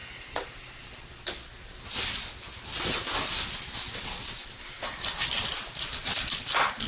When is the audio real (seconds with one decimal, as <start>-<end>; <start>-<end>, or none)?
0.0-6.9